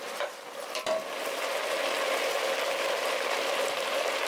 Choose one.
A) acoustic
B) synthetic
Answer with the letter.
B